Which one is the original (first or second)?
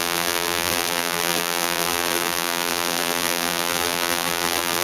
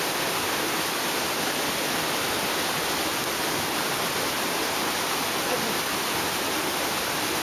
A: second